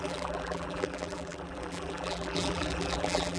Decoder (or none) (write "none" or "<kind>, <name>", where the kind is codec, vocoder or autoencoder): vocoder, BigVGAN v2